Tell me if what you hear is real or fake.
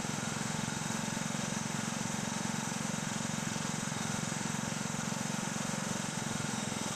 fake